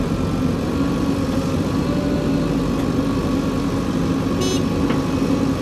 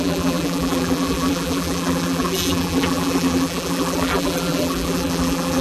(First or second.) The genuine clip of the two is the first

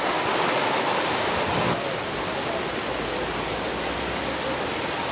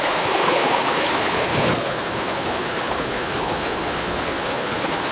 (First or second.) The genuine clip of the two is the first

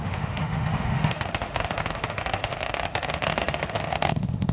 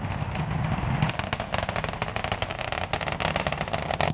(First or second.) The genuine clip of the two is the second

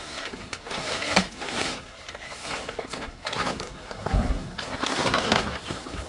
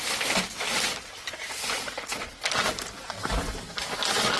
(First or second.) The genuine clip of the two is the second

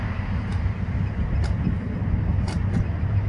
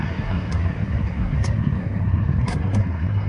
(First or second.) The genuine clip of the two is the first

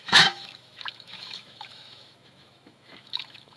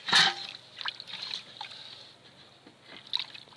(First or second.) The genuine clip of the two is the second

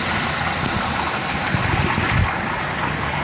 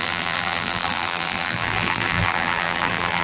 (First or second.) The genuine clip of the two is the first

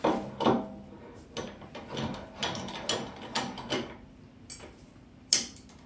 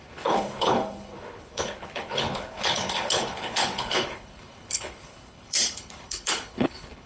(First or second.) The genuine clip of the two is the first